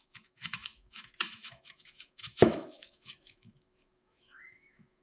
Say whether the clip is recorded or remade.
remade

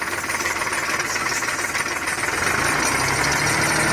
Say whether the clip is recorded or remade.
recorded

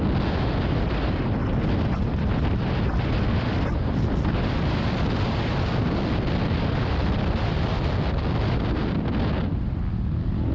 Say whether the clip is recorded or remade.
recorded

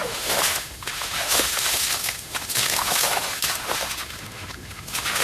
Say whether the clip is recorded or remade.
remade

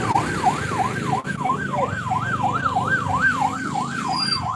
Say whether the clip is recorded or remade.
recorded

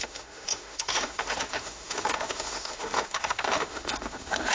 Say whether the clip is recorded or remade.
remade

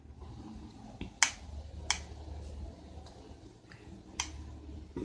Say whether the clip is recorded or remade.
recorded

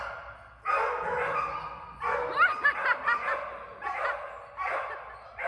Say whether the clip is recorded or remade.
recorded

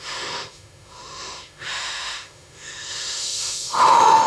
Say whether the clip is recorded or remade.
remade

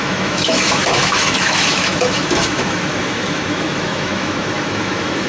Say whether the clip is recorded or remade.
remade